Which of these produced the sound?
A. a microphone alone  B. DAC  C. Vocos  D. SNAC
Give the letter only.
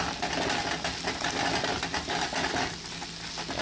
A